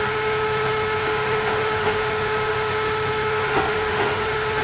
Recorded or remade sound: remade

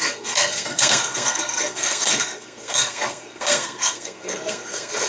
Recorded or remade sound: remade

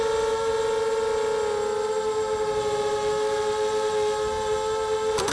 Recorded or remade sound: recorded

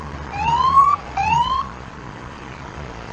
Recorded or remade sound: remade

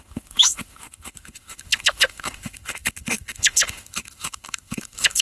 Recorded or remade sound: remade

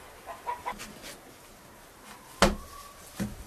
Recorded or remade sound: recorded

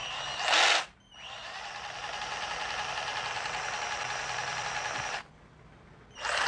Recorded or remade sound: recorded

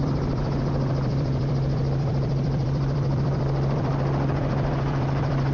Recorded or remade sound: remade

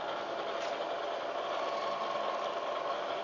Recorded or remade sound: recorded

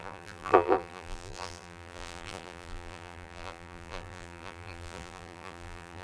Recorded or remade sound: remade